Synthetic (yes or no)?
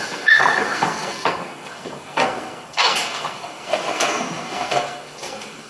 yes